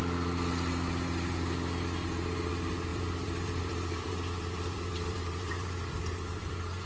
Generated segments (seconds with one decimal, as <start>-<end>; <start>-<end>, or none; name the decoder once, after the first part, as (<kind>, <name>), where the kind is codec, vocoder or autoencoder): 2.9-6.9 (vocoder, BigVGAN v2)

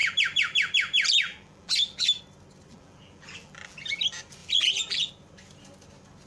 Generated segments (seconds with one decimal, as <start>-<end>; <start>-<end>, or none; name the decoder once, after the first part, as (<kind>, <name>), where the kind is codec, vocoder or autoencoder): 0.0-2.2 (vocoder, BigVGAN v2); 2.7-4.0; 4.4-5.1